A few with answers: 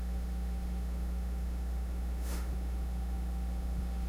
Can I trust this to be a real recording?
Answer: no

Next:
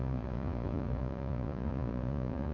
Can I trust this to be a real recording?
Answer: no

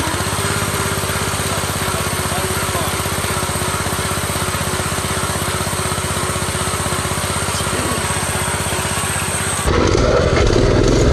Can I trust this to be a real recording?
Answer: yes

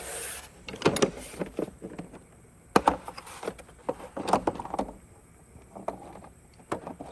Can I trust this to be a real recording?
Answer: yes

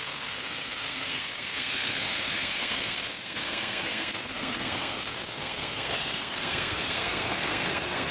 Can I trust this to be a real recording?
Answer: no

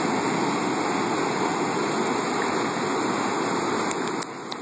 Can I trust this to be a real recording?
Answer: yes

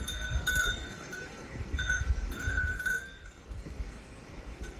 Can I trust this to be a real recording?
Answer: no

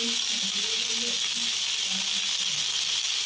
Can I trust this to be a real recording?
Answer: yes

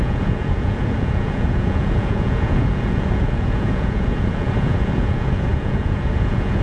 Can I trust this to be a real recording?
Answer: no